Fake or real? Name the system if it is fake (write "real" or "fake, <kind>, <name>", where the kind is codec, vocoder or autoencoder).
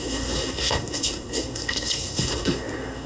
fake, codec, SNAC